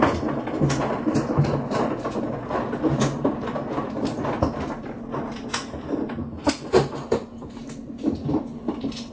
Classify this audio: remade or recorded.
recorded